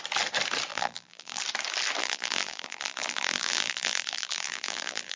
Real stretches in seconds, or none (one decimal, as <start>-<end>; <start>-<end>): 0.0-0.7; 1.4-2.0